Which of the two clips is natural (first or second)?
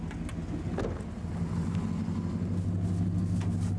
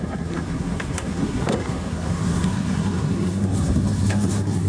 first